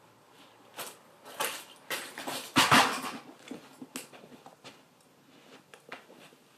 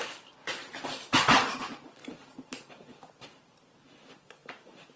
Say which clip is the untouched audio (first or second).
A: first